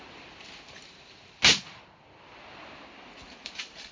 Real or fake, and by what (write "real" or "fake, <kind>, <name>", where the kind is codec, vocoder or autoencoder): real